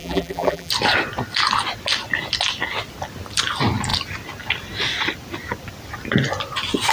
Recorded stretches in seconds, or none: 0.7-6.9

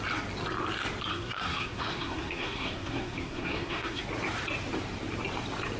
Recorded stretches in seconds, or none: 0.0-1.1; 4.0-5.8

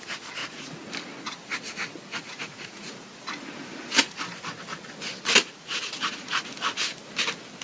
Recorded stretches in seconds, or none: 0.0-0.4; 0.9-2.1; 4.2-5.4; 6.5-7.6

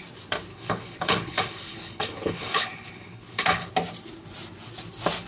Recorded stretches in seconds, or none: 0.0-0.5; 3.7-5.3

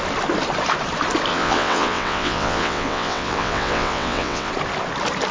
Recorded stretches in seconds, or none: 0.0-1.3; 4.5-5.3

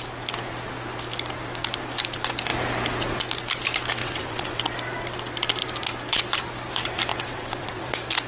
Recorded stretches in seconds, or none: 0.0-4.0; 4.6-7.1; 7.9-8.3

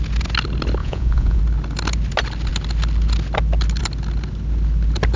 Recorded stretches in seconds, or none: 0.0-0.8; 1.4-5.2